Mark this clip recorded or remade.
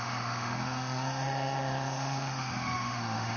remade